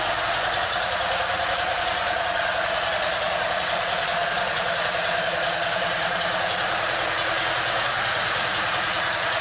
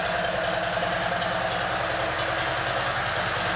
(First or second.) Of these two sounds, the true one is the second